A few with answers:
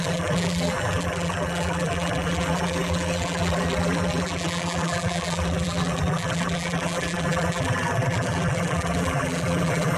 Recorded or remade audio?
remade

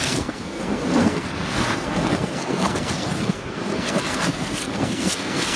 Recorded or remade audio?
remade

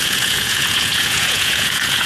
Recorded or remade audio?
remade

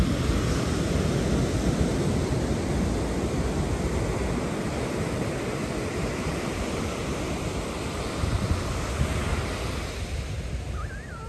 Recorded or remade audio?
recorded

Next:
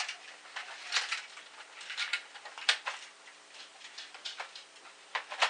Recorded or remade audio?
recorded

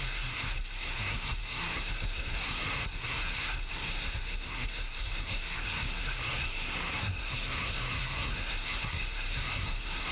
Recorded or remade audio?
remade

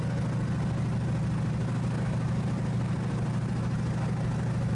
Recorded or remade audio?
recorded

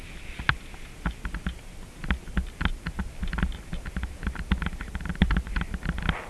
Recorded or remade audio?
recorded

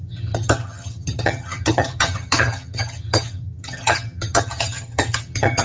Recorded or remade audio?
remade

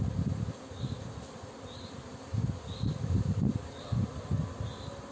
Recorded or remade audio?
recorded